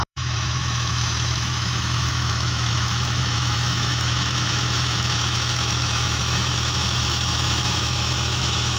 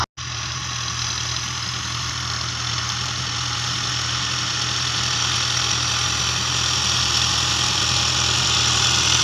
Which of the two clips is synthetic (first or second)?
first